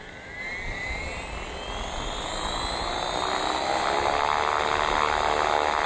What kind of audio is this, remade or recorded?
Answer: recorded